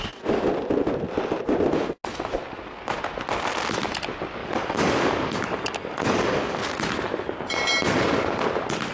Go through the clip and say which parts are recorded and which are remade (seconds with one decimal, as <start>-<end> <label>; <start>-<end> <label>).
0.0-4.4 recorded; 4.4-6.6 remade; 6.6-8.9 recorded